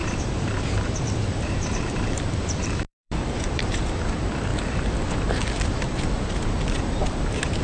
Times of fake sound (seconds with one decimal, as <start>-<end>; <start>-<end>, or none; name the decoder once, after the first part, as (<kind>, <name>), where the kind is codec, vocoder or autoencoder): 0.0-4.5 (vocoder, BigVGAN v2); 5.3-7.6